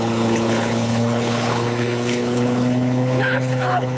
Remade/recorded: remade